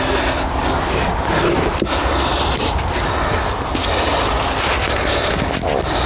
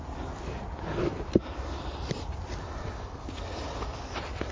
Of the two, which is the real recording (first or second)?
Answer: first